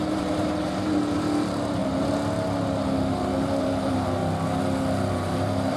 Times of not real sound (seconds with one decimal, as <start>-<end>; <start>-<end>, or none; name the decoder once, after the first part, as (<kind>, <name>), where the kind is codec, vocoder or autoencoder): 0.0-1.8 (vocoder, BigVGAN v2); 3.6-4.2; 5.1-5.8

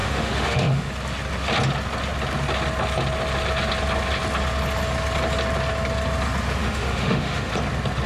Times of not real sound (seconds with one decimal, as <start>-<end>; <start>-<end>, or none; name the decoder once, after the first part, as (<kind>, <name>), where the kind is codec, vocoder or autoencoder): 0.0-0.9 (autoencoder, DAC-VAE); 6.6-7.5

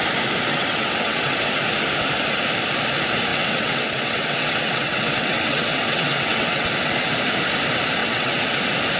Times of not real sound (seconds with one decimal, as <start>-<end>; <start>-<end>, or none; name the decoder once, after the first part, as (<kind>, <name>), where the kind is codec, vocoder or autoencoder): 0.5-1.5 (vocoder, WaveNeXt); 3.3-6.7; 8.0-8.6